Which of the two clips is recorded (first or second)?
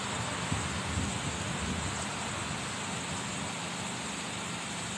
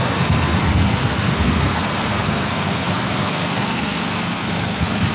first